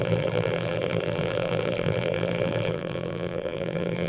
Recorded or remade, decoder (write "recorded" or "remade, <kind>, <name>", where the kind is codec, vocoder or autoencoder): remade, vocoder, BigVGAN v2